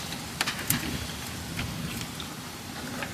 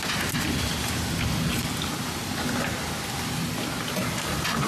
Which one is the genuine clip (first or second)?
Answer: second